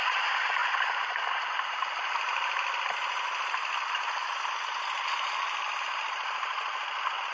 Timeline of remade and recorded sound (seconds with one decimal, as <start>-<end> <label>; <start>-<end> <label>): 0.0-7.3 recorded